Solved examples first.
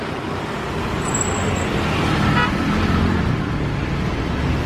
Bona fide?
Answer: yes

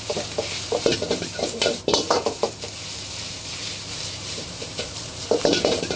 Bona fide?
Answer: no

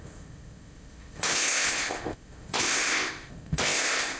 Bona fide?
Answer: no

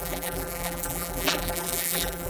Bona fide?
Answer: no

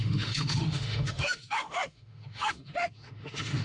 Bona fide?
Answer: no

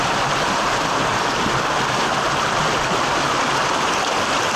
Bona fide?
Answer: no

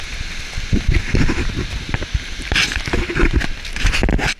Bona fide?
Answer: yes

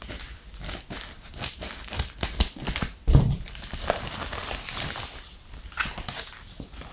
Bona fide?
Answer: yes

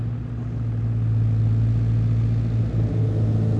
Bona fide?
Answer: yes